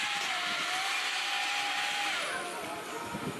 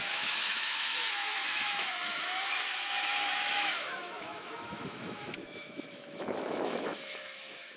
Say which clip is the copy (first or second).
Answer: second